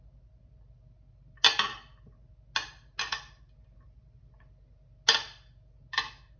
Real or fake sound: real